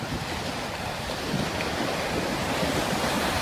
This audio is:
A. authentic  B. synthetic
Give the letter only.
A